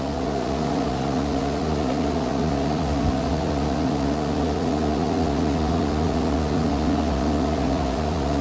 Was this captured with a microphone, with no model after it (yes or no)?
no